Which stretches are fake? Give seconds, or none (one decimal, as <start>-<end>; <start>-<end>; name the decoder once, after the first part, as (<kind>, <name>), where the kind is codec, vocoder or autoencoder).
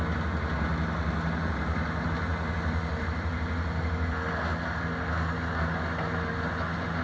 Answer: none